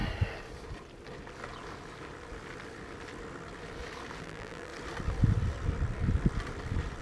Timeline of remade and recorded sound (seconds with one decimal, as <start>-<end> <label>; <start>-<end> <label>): 0.0-4.2 recorded; 4.2-4.7 remade; 4.7-7.0 recorded